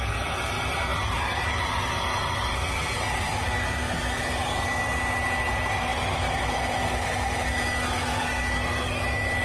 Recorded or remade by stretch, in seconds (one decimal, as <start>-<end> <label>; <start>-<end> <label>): 0.0-9.4 recorded